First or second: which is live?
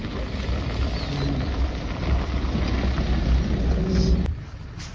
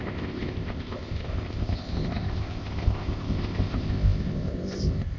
first